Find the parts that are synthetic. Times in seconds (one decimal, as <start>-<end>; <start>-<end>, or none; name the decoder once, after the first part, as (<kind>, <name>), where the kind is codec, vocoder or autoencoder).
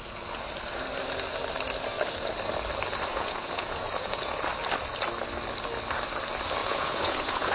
3.1-4.4 (vocoder, Vocos); 6.6-7.5